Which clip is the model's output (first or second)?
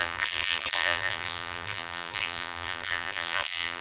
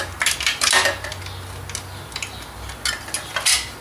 first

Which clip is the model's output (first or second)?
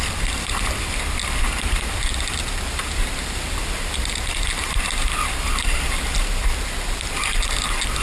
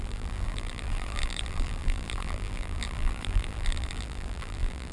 second